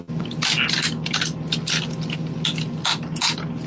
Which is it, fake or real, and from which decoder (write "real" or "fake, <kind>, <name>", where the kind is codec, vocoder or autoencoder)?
real